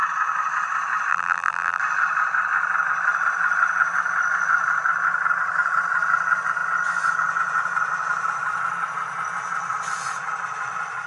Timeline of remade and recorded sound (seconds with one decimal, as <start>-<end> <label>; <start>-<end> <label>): 0.0-1.1 recorded; 1.1-1.8 remade; 1.8-11.1 recorded